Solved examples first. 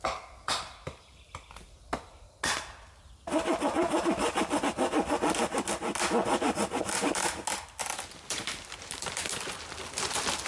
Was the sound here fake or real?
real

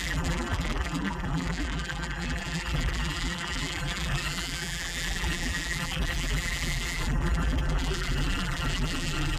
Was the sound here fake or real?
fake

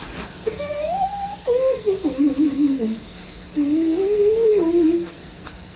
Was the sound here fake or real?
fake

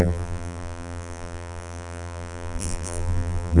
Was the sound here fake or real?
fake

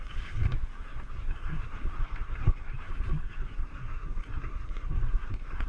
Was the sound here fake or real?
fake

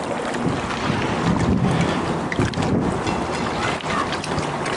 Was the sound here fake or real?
real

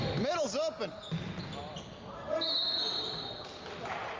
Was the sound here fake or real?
real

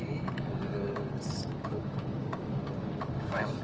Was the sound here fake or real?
fake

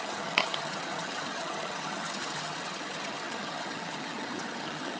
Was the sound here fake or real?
fake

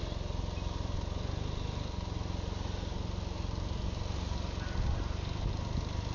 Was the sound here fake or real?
real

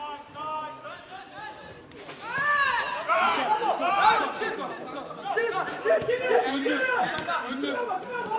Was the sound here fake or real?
fake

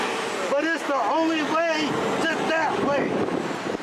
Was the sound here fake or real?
real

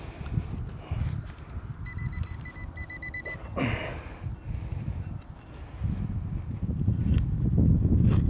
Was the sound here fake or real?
real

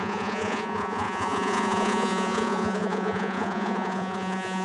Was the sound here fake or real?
fake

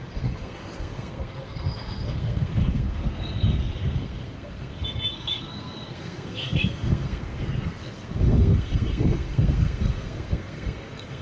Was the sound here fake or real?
fake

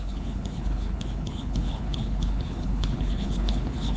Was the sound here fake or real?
fake